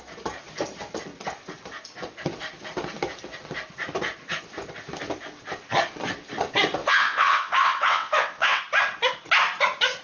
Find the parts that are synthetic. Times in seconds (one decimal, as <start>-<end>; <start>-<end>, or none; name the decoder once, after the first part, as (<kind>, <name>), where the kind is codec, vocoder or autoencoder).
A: 6.8-8.6 (vocoder, WaveNeXt)